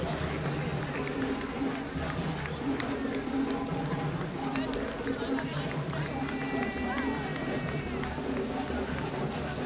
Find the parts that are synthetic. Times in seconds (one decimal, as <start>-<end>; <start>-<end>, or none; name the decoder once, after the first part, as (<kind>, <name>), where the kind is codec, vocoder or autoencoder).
none